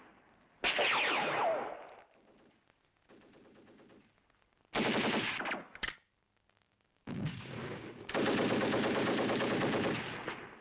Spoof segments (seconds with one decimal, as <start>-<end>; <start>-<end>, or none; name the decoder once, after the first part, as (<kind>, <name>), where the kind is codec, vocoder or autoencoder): 6.2-9.5 (codec, DAC)